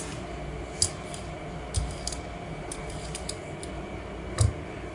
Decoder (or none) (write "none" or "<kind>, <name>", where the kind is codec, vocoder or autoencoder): none